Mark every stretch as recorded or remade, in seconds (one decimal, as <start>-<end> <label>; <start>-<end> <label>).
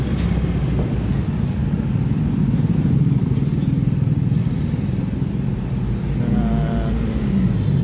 0.0-7.8 recorded